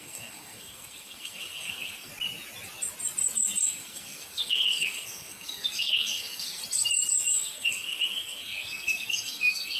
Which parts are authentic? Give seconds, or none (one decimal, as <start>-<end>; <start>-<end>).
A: 2.1-3.6; 6.6-7.3